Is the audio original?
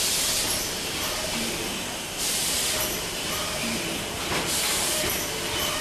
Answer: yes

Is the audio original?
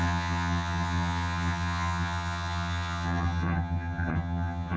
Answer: no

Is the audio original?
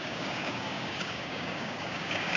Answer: no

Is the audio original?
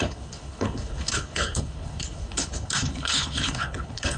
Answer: no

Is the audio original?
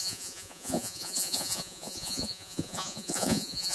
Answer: no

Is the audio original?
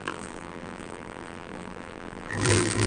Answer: no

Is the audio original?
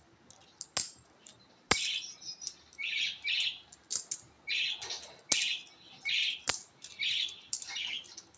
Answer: yes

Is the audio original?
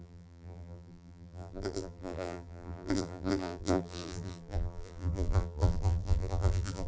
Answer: no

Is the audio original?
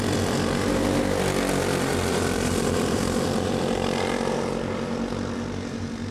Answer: no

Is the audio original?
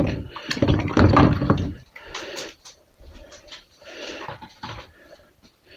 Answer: no